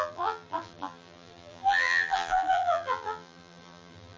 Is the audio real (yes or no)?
no